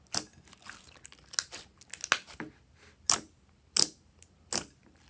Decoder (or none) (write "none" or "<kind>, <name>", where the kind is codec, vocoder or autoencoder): none